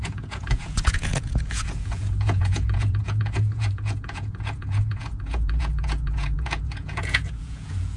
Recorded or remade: remade